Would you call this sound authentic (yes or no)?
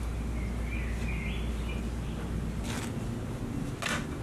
yes